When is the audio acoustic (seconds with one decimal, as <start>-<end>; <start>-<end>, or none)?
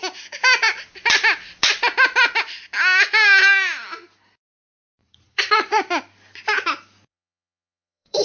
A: 0.0-5.0; 5.8-7.1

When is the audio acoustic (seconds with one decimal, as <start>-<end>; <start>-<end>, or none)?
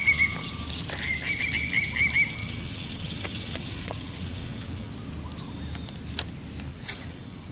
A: 0.0-2.4; 4.9-6.7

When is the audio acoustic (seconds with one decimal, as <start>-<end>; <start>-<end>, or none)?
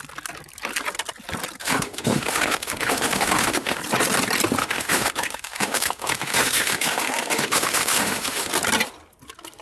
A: 0.0-1.6; 3.8-4.6; 8.5-9.6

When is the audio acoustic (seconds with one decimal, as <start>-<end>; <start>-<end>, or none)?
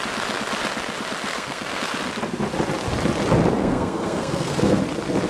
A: 0.0-1.3; 1.8-3.6; 4.8-5.3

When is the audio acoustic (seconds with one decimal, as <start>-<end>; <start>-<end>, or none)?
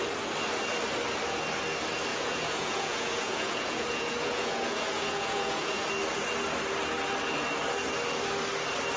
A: 0.0-2.1; 5.9-9.0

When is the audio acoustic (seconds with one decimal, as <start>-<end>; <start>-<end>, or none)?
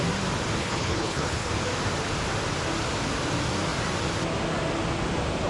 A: 0.0-0.6; 1.5-5.5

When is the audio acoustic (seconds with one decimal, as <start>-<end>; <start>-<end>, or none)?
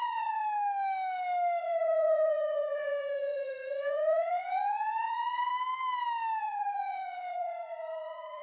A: 0.4-1.6; 5.5-6.4